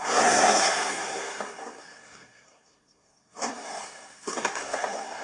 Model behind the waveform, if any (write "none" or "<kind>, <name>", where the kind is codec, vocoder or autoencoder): codec, SNAC